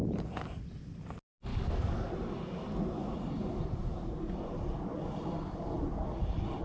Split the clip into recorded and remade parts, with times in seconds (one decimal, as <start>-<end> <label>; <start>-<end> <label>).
0.0-1.5 recorded; 1.5-2.1 remade; 2.1-6.6 recorded